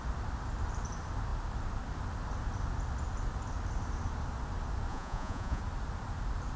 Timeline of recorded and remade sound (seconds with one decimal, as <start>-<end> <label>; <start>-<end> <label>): 0.0-4.9 recorded; 4.9-5.6 remade; 5.6-6.6 recorded